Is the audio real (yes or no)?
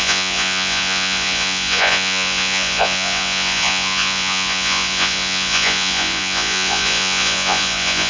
no